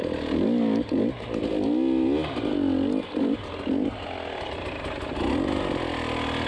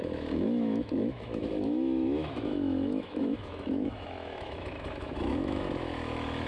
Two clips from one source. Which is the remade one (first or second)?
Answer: second